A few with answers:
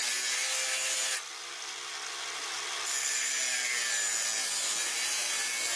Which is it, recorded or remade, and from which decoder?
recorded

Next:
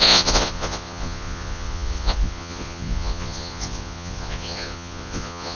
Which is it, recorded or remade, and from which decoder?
remade, vocoder, Vocos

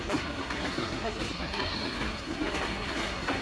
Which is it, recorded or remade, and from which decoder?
remade, codec, SNAC